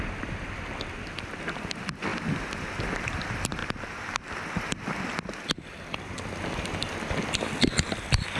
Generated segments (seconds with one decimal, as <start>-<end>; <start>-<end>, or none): none